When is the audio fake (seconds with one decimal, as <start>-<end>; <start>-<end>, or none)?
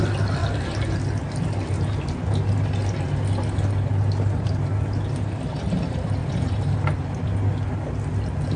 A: none